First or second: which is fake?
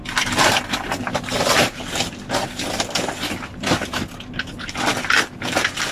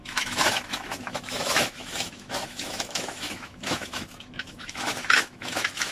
second